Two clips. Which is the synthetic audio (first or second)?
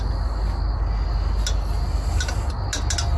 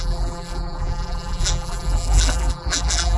second